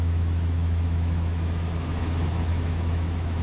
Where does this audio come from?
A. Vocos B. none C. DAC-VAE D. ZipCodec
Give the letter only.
C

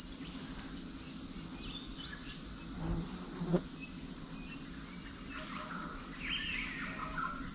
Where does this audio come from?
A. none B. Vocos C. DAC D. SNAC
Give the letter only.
A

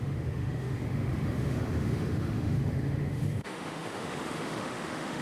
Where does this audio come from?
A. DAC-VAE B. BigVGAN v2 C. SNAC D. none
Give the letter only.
A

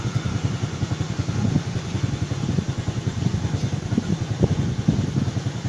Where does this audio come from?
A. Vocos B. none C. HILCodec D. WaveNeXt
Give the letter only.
A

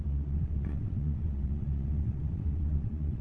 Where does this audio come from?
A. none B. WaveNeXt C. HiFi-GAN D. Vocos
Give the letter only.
B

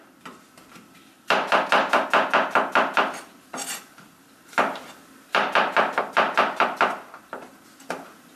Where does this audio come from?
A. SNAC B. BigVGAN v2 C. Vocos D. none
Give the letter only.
B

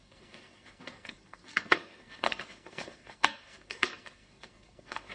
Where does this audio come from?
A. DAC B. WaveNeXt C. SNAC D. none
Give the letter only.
C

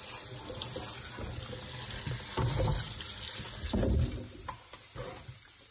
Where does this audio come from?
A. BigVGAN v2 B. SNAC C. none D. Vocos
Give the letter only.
C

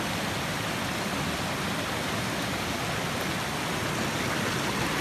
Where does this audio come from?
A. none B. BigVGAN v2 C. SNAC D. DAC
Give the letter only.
A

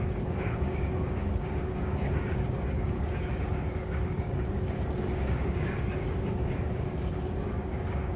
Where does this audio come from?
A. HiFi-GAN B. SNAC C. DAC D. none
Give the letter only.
C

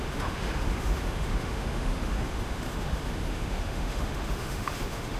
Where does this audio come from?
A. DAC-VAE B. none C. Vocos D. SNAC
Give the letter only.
A